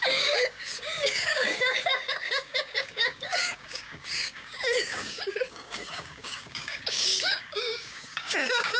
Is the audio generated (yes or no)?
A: yes